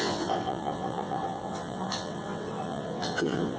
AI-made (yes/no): yes